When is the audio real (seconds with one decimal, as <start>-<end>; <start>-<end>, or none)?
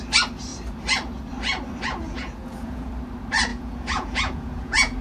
0.0-2.0; 2.9-3.5